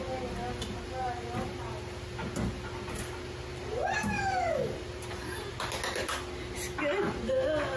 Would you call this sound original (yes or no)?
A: yes